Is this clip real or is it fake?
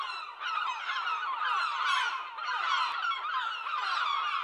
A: fake